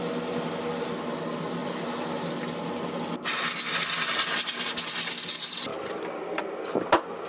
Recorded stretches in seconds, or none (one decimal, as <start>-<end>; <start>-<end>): 0.0-5.7; 6.4-7.3